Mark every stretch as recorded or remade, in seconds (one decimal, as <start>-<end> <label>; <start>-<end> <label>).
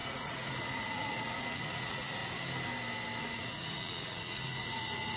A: 0.0-2.2 remade; 2.2-3.2 recorded; 3.2-5.2 remade